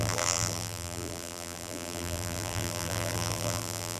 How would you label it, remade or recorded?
remade